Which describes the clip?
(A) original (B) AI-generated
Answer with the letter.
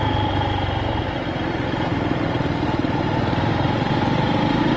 A